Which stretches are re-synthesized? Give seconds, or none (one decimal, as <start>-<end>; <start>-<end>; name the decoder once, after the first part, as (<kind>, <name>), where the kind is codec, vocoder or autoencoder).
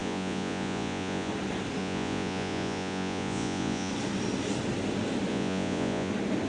0.0-1.3 (vocoder, Vocos); 1.8-3.9; 5.3-6.1